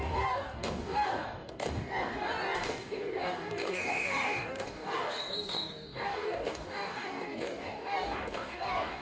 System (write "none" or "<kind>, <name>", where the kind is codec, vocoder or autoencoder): codec, DAC